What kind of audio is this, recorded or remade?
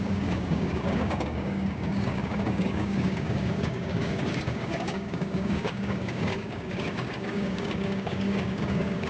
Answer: remade